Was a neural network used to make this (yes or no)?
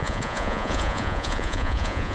yes